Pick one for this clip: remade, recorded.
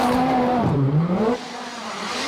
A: remade